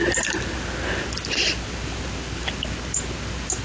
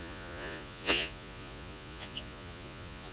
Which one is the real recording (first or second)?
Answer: first